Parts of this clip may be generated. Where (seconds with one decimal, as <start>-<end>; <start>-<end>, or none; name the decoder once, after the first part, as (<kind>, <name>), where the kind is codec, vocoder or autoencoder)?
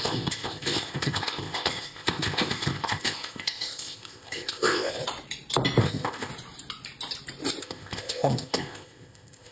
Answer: 0.0-5.0 (codec, ZipCodec); 5.8-6.3; 7.6-9.5